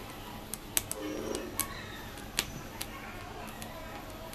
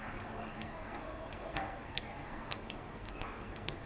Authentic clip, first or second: first